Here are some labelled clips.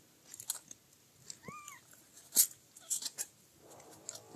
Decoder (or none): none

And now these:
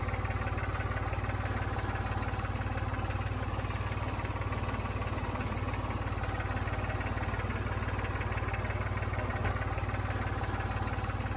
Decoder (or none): none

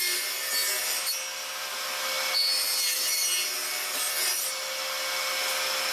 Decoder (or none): none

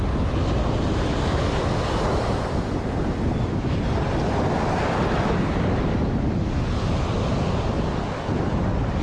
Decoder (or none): none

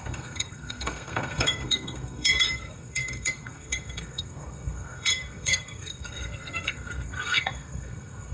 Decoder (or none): codec, SNAC